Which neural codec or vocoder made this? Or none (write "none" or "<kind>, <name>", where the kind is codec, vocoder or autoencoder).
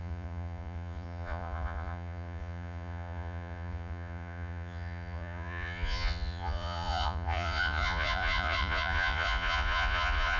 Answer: vocoder, Vocos